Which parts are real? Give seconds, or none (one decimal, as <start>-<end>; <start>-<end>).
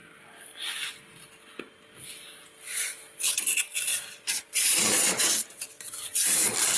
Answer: 0.0-3.9; 5.9-6.8